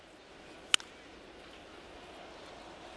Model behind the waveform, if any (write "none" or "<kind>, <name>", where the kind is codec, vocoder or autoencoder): none